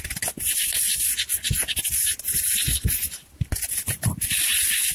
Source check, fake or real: real